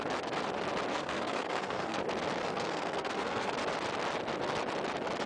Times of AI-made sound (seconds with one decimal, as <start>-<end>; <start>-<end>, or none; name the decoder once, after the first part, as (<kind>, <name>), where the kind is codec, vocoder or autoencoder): 0.9-2.0 (codec, SNAC); 2.4-3.5

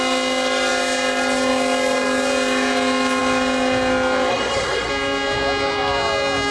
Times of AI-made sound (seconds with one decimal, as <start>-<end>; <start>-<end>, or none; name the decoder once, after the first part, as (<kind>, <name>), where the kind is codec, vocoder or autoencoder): 4.3-4.9 (codec, SNAC)